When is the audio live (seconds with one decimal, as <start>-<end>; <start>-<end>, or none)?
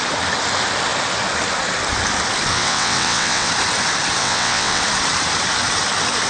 0.0-2.5; 3.5-4.2; 4.8-6.3